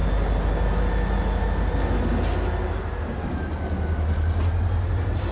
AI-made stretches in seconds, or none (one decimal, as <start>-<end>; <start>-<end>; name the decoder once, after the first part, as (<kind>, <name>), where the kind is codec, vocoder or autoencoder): none